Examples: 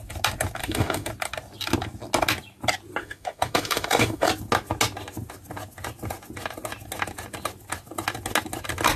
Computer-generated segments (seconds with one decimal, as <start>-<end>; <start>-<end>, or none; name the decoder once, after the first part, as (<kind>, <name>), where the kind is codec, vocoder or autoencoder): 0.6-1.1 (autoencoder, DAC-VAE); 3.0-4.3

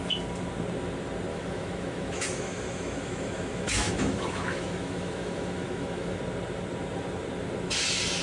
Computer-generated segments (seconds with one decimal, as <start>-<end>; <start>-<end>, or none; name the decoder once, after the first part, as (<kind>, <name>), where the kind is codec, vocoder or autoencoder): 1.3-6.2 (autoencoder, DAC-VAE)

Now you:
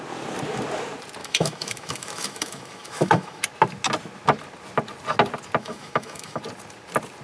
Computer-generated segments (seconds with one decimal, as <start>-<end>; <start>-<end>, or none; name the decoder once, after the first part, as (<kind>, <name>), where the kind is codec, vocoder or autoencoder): 1.2-3.4 (autoencoder, DAC-VAE); 5.6-6.4